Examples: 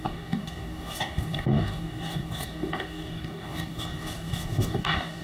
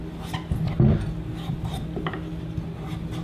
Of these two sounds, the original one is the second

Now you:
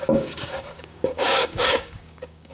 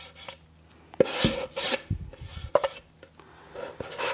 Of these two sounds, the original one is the second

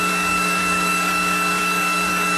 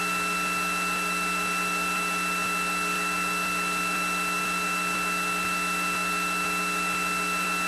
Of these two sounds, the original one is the second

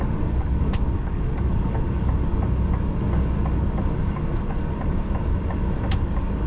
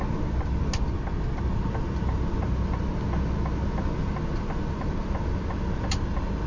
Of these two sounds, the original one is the second